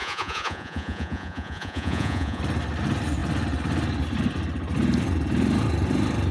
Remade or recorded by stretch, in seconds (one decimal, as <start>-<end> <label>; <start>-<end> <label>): 0.0-2.4 remade; 2.4-6.3 recorded